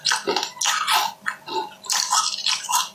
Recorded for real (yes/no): yes